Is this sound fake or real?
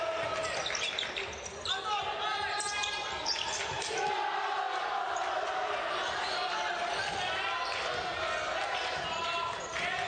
real